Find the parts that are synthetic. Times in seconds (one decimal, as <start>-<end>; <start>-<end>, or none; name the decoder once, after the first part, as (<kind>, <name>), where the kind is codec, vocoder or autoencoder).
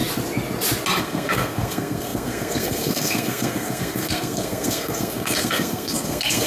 1.0-6.5 (codec, SNAC)